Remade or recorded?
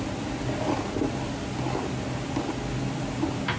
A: recorded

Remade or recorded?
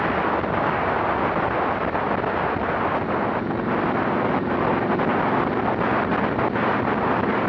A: recorded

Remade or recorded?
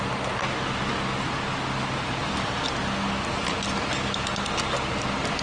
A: recorded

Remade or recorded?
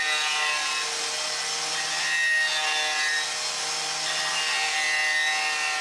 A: recorded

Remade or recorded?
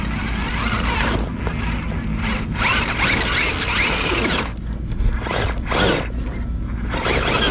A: recorded